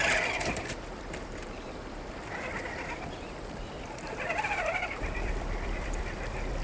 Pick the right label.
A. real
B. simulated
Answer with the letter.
B